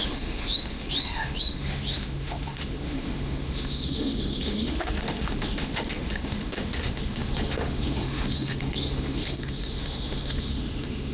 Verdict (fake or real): fake